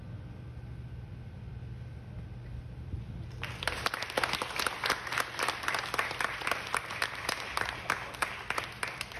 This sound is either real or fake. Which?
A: real